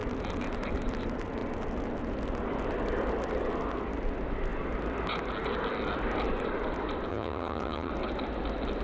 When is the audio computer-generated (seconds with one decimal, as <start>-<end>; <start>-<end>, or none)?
7.1-7.9